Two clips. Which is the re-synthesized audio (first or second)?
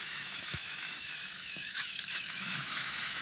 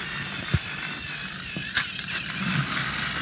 first